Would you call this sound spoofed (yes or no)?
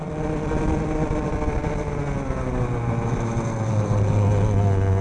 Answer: no